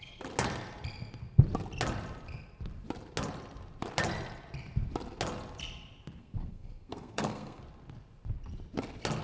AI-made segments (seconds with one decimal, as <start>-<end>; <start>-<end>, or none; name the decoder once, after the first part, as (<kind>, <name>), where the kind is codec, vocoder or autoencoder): 6.2-7.6 (codec, SNAC)